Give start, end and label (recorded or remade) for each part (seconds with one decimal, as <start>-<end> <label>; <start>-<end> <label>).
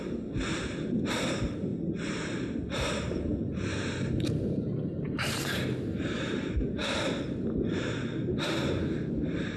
0.0-1.7 remade; 1.7-2.9 recorded; 2.9-6.8 remade; 6.8-7.7 recorded; 7.7-9.6 remade